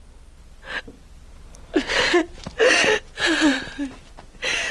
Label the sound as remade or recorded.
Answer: recorded